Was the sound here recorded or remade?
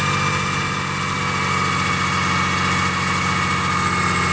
recorded